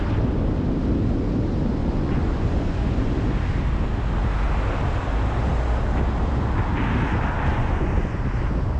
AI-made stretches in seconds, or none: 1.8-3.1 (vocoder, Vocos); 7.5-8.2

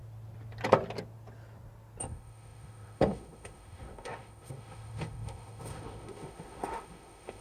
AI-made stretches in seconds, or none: 2.0-7.4 (autoencoder, DAC-VAE)

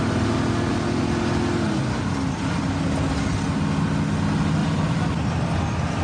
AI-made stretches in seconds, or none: 4.6-6.0 (vocoder, BigVGAN v2)